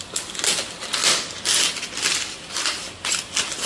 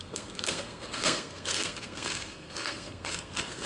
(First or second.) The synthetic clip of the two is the second